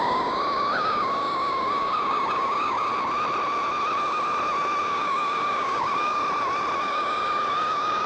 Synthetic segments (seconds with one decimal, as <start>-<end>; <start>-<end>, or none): 0.0-2.9; 4.8-6.2; 6.8-8.1